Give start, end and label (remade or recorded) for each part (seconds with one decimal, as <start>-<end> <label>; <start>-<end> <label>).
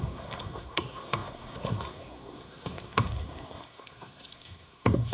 0.0-5.1 remade